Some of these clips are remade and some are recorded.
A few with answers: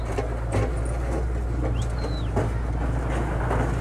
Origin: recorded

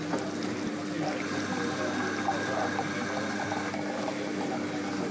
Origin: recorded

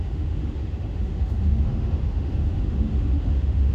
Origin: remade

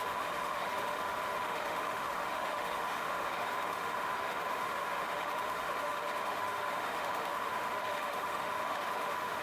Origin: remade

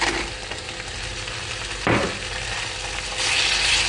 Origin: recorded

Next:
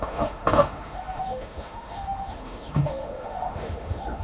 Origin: remade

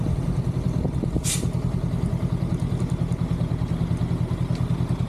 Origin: recorded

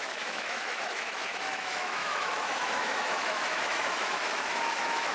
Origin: remade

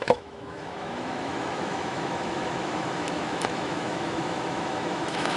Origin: remade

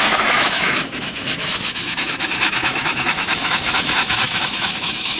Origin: remade